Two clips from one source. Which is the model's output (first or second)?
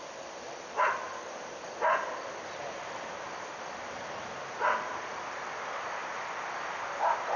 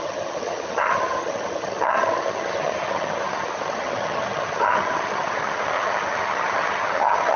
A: second